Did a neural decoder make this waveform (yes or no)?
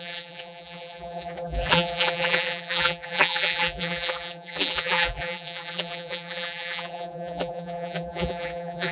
yes